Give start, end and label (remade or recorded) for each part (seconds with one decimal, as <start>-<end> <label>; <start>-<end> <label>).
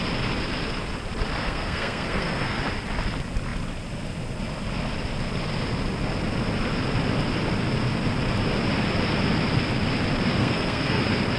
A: 0.0-1.4 recorded; 1.4-2.6 remade; 2.6-10.4 recorded; 10.4-11.0 remade; 11.0-11.4 recorded